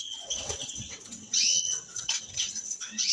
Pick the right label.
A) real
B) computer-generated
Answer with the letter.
B